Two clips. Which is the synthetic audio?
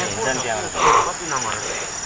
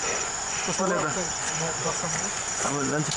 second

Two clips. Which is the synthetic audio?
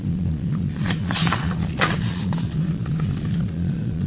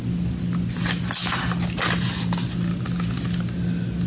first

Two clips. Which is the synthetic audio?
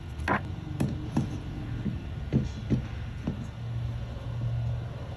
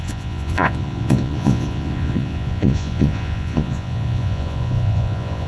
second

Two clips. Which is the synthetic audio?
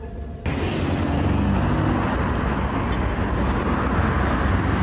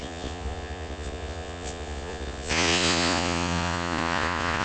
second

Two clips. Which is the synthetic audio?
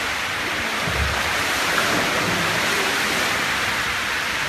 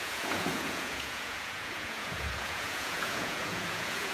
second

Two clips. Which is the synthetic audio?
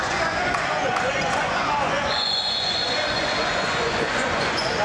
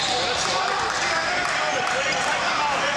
first